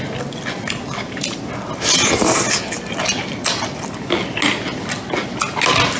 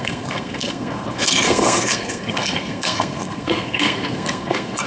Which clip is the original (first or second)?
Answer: first